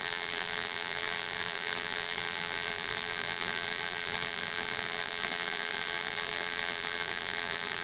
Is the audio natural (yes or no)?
no